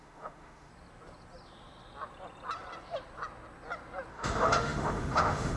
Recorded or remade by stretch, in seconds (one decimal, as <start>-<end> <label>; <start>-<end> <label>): 0.0-0.7 remade; 0.7-4.1 recorded; 4.1-5.6 remade